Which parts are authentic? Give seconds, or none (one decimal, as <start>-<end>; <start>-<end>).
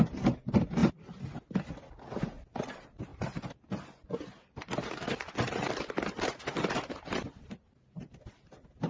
0.0-8.9